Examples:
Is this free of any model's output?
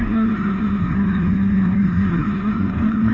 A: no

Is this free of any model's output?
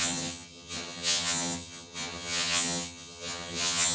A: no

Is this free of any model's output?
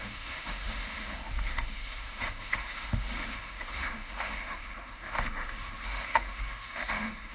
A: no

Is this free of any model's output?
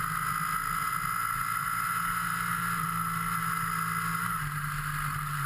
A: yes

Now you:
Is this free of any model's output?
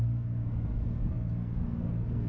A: no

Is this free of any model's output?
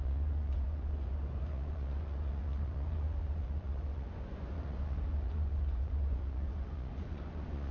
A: no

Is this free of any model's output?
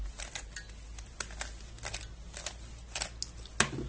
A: yes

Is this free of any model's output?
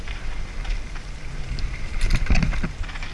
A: yes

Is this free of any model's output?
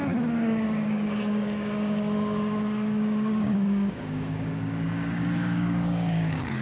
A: no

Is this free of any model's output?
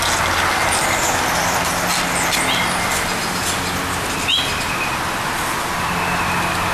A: yes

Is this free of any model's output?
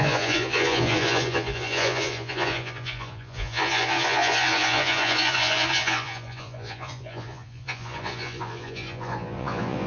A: no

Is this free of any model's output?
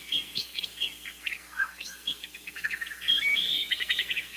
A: no